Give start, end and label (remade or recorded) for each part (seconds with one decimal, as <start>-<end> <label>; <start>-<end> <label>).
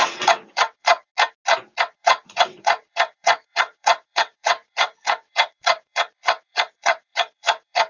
0.0-1.1 remade; 1.1-1.8 recorded; 1.8-7.9 remade